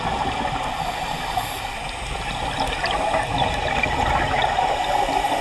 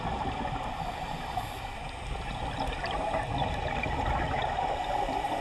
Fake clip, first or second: second